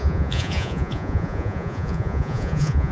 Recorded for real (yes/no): no